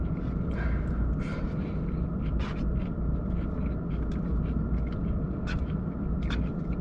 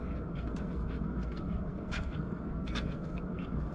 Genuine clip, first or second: first